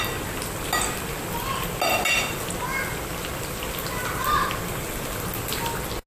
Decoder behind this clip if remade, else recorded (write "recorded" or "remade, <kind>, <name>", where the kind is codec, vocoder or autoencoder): recorded